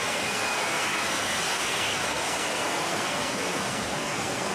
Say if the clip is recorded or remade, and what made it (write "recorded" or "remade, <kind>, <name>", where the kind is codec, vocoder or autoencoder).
remade, codec, SNAC